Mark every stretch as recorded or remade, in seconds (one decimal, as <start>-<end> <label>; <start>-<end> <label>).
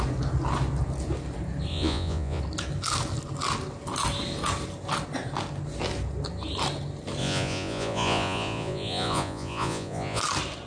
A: 0.0-1.7 recorded; 1.7-2.4 remade; 2.4-7.2 recorded; 7.2-10.2 remade; 10.2-10.7 recorded